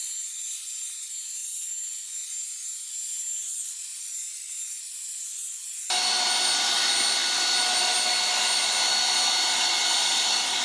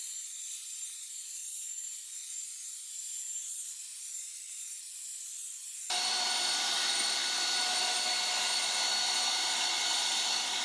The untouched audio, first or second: first